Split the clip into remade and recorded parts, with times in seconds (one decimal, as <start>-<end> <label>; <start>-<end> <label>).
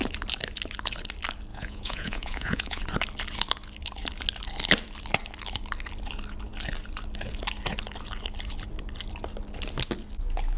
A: 0.0-1.5 recorded; 1.5-2.8 remade; 2.8-10.6 recorded